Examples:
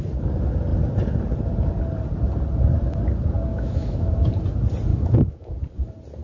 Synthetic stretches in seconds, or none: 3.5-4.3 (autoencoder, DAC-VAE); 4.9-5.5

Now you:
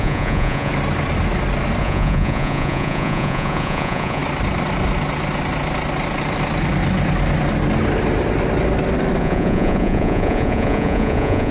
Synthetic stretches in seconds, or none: 0.0-0.7 (vocoder, Vocos); 1.8-4.2; 9.2-11.5

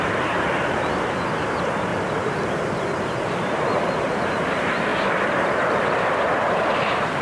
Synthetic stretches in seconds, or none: 0.0-0.5 (vocoder, BigVGAN v2); 1.5-1.9; 3.4-4.9; 6.4-7.2

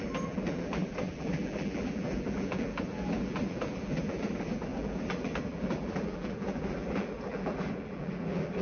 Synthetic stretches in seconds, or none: 0.0-8.6 (vocoder, BigVGAN v2)

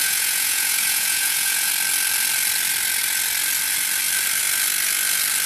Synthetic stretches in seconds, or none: 0.0-1.7 (vocoder, Vocos)

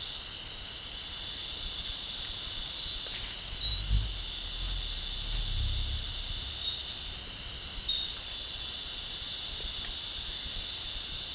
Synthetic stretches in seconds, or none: none

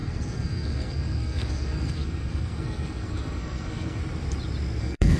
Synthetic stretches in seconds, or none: 0.0-4.0 (codec, SNAC); 4.8-5.2

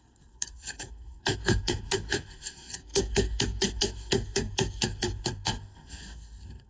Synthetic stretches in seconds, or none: 0.0-6.7 (codec, SNAC)